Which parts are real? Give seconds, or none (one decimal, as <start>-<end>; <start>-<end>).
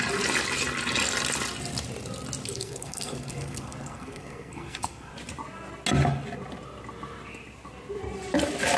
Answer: 0.0-2.4; 5.1-8.8